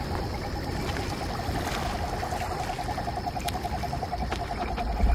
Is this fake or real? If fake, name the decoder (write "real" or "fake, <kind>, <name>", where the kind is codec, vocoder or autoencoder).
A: real